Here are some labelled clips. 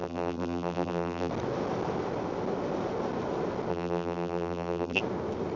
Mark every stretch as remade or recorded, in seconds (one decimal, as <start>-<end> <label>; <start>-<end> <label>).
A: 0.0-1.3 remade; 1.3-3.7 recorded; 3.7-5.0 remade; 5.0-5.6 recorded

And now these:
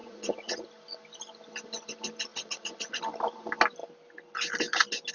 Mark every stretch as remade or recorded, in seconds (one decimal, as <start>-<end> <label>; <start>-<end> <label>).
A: 0.0-0.6 remade; 0.6-2.3 recorded; 2.3-3.0 remade; 3.0-5.1 recorded

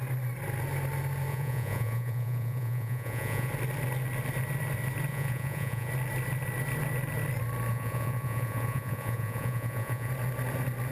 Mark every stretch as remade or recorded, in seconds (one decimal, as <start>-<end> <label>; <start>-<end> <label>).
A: 0.0-1.3 recorded; 1.3-3.5 remade; 3.5-5.1 recorded; 5.1-5.9 remade; 5.9-7.7 recorded; 7.7-10.1 remade; 10.1-10.9 recorded